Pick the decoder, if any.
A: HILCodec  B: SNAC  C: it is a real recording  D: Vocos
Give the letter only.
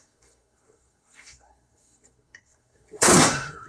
B